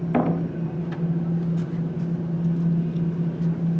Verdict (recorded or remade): recorded